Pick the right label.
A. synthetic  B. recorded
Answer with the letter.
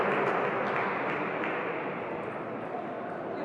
B